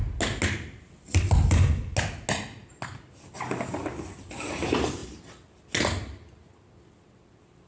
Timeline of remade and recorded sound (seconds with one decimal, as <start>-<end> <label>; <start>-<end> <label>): 0.0-7.7 recorded